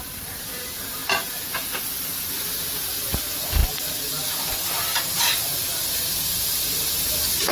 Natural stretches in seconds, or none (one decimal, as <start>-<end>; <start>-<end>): 1.0-2.3; 3.6-6.4